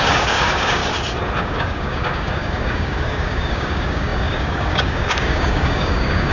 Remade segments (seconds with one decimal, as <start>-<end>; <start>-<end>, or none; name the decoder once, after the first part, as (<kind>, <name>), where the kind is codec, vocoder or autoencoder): 0.0-0.8 (codec, DAC); 1.4-6.3